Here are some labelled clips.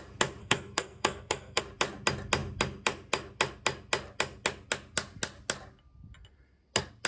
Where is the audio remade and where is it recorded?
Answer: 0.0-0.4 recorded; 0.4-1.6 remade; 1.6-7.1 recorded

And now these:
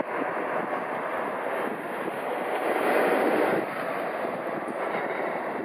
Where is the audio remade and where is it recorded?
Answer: 0.0-5.6 recorded

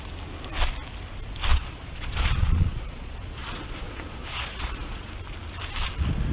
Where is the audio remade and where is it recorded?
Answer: 0.0-1.5 recorded; 1.5-5.1 remade; 5.1-6.3 recorded

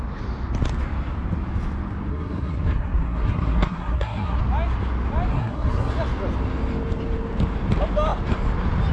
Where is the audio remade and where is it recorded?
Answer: 0.0-2.1 recorded; 2.1-4.4 remade; 4.4-5.3 recorded; 5.3-5.9 remade; 5.9-8.9 recorded

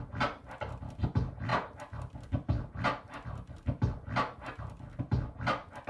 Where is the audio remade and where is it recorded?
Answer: 0.0-5.9 recorded